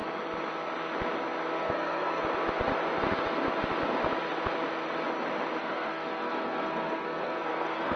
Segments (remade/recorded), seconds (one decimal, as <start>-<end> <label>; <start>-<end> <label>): 0.0-1.6 recorded; 1.6-2.2 remade; 2.2-5.6 recorded; 5.6-8.0 remade